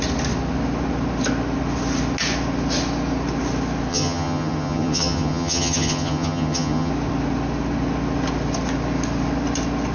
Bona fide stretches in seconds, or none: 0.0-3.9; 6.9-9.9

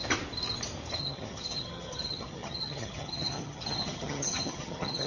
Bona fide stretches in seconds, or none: 0.0-1.0

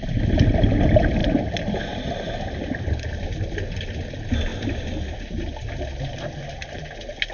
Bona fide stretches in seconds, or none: 0.0-7.3

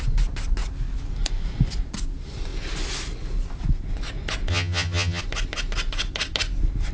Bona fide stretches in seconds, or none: 0.0-4.5; 5.2-6.9

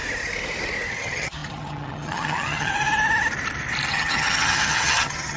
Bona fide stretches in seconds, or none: 0.0-0.9; 2.7-3.9

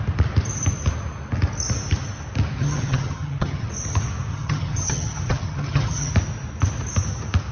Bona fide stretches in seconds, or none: 0.0-2.6; 3.7-4.3; 6.1-7.5